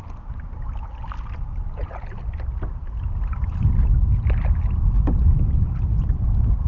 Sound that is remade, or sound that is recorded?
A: recorded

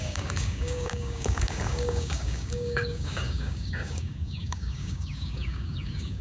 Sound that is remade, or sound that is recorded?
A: remade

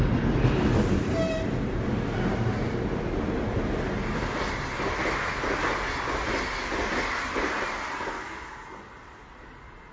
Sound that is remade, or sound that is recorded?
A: recorded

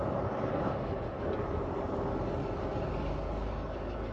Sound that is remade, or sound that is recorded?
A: remade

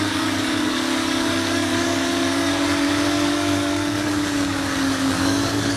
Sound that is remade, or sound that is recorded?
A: remade